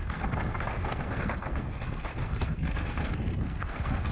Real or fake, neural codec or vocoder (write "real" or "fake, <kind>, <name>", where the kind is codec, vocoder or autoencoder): fake, codec, SNAC